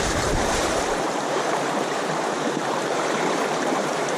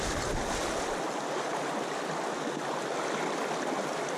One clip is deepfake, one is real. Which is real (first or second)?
second